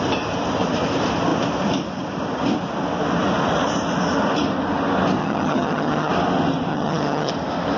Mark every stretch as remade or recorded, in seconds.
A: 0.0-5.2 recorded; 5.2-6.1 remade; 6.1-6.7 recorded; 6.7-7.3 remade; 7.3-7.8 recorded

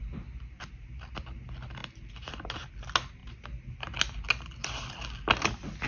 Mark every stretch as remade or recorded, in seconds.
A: 0.0-5.9 recorded

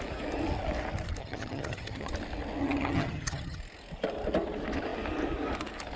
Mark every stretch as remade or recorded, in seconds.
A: 0.0-1.2 recorded; 1.2-2.1 remade; 2.1-2.6 recorded; 2.6-3.6 remade; 3.6-6.0 recorded

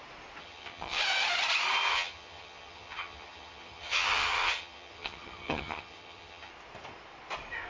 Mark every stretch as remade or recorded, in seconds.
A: 0.0-0.4 recorded; 0.4-1.0 remade; 1.0-1.9 recorded; 1.9-6.5 remade; 6.5-7.7 recorded

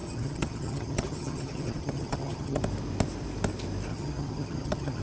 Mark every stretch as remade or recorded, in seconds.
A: 0.0-2.6 remade; 2.6-3.9 recorded; 3.9-5.0 remade

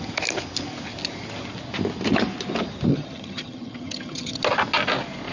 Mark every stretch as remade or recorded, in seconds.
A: 0.0-2.9 recorded; 2.9-4.4 remade; 4.4-5.3 recorded